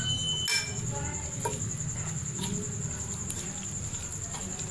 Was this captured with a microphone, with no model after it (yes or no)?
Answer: yes